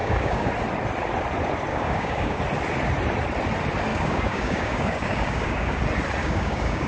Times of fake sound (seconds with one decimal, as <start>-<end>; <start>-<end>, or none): 0.0-0.5; 1.7-2.4; 3.9-5.8; 6.2-6.9